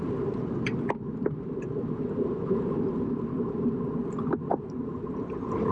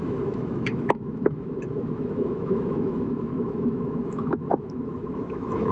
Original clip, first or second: first